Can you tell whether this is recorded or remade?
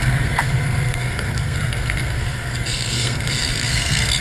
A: remade